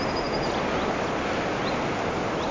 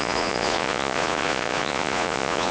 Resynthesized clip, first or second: second